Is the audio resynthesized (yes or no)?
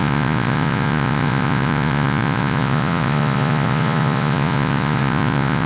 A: yes